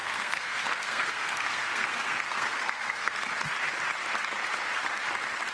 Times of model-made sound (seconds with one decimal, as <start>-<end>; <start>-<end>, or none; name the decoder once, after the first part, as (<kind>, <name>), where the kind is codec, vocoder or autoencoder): 0.0-3.3 (codec, SNAC)